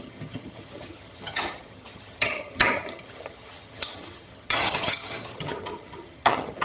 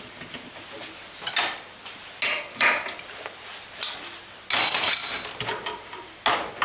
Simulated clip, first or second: first